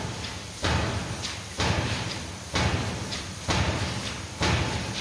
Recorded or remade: recorded